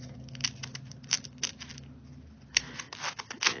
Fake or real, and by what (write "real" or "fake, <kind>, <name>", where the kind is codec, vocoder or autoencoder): real